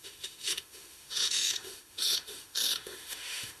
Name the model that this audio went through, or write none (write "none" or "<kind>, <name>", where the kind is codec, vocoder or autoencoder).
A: autoencoder, DAC-VAE